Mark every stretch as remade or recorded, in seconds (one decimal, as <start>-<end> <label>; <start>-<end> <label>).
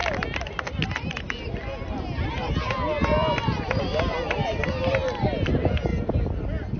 0.0-6.8 recorded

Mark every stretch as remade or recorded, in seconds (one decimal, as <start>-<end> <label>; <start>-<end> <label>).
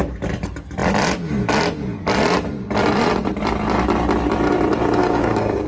0.0-5.0 recorded; 5.0-5.7 remade